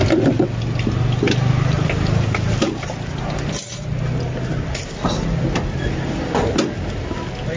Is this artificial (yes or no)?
no